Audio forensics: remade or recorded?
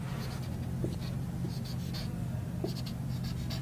recorded